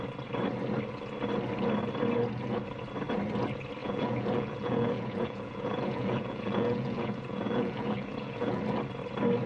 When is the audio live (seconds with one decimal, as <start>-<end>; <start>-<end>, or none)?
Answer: 0.0-3.8; 8.6-9.5